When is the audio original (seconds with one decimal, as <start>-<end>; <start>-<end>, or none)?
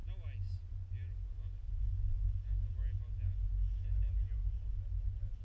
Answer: 0.0-5.4